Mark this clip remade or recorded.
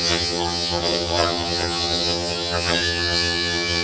remade